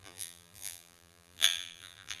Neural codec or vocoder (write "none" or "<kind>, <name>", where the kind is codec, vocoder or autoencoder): vocoder, BigVGAN v2